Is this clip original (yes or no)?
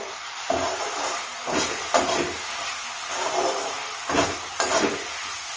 yes